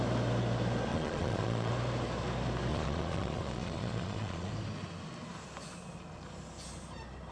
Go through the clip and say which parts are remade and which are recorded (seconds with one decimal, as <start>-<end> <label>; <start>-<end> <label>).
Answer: 0.0-0.9 recorded; 0.9-1.7 remade; 1.7-2.7 recorded; 2.7-4.5 remade; 4.5-7.3 recorded